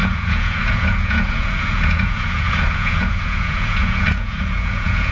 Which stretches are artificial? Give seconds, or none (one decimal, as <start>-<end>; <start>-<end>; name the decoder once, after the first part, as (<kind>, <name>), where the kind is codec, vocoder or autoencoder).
0.0-5.1 (vocoder, Vocos)